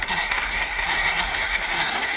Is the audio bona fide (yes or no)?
no